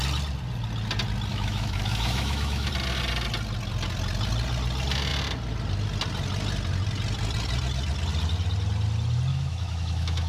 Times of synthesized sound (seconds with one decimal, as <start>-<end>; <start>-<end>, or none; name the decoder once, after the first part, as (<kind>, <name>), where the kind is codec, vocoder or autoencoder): 1.3-2.7 (autoencoder, DAC-VAE); 9.3-10.3